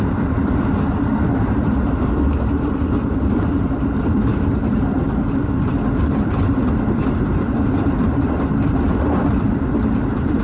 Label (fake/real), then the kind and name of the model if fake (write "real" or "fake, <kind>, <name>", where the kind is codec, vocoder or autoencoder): fake, vocoder, BigVGAN v2